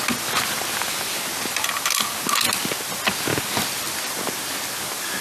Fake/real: real